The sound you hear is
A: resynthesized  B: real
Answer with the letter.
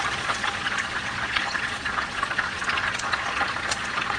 A